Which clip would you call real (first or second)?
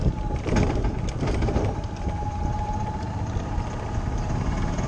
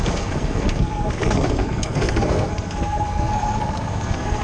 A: first